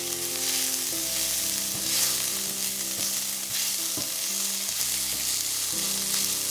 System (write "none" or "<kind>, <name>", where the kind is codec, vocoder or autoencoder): none